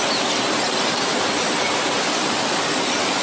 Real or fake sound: real